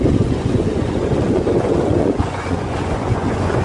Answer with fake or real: fake